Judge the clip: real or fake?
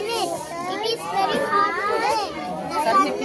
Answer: fake